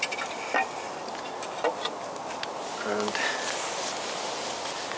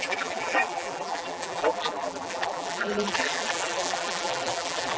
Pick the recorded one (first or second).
first